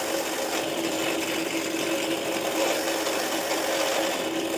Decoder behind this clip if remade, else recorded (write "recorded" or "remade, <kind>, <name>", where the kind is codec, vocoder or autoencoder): recorded